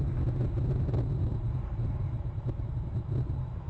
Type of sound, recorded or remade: remade